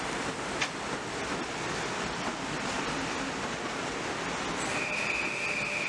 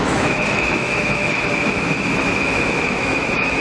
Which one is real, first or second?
first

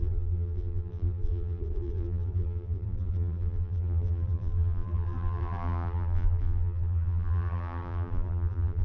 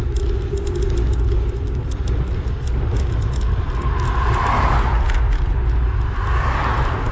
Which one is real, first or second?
second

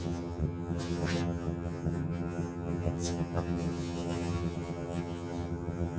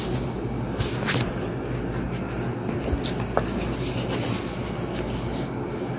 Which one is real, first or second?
second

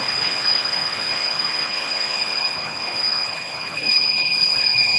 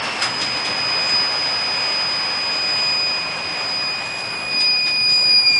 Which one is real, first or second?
second